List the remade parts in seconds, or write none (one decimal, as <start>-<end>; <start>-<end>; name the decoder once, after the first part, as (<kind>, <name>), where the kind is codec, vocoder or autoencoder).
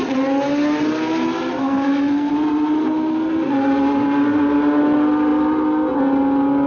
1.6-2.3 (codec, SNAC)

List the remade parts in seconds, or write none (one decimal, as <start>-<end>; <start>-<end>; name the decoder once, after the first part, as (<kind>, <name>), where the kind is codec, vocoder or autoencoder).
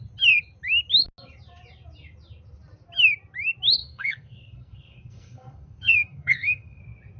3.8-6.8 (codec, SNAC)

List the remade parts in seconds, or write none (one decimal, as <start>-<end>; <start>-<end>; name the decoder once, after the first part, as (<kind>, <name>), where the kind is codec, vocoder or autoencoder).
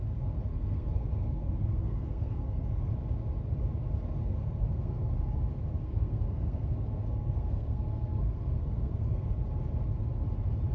0.5-2.9 (codec, SNAC); 4.2-5.1; 5.8-9.2